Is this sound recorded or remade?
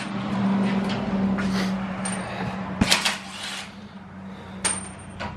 recorded